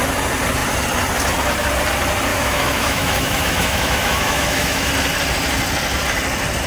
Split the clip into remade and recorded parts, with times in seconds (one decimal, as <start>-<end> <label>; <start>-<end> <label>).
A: 0.0-2.3 recorded; 2.3-4.9 remade; 4.9-6.7 recorded